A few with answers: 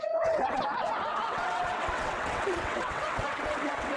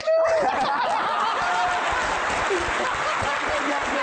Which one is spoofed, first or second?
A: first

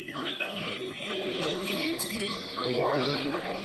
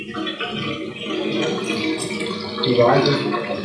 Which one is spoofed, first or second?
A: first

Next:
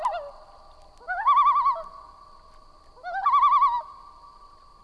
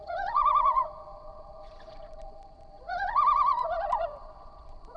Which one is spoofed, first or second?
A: second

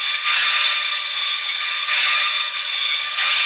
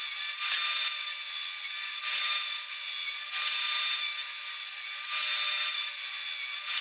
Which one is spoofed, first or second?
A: first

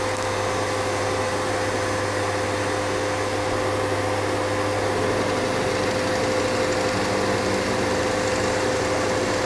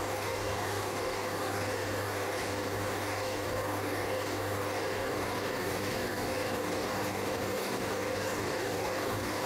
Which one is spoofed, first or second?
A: second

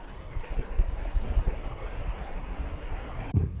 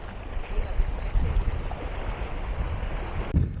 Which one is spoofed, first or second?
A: first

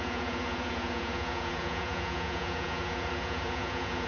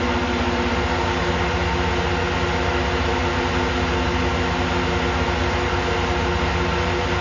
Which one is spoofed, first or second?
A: first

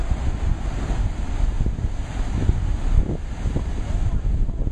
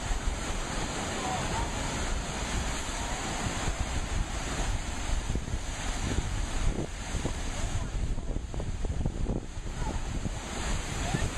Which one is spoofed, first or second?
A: second